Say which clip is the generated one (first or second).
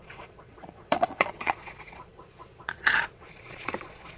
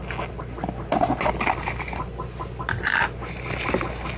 first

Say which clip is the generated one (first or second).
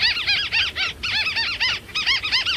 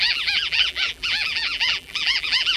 second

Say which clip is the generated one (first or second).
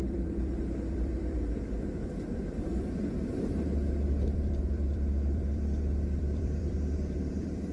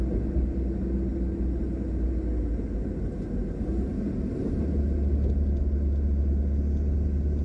first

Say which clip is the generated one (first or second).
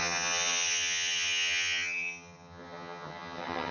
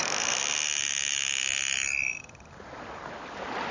first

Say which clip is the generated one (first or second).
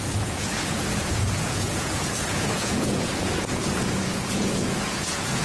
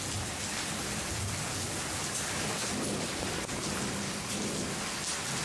first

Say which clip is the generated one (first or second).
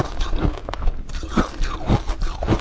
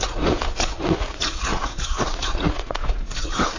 second